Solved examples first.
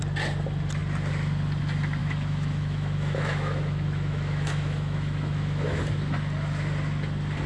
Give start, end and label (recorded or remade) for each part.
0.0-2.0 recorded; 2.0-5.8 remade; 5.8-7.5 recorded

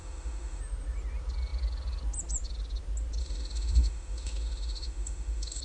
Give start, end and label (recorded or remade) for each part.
0.0-0.6 remade; 0.6-3.2 recorded; 3.2-5.6 remade